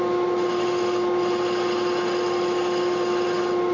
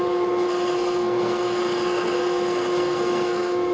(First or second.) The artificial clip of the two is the second